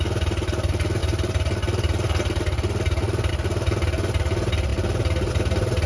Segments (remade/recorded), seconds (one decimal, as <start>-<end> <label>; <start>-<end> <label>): 0.0-5.9 recorded

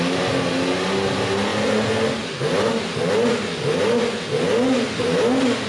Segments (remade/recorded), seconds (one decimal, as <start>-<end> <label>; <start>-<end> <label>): 0.0-5.7 recorded

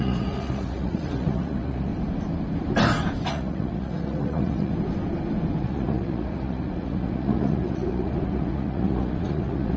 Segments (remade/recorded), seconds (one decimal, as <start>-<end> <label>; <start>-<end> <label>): 0.0-1.9 remade; 1.9-3.3 recorded; 3.3-4.7 remade; 4.7-5.6 recorded; 5.6-9.8 remade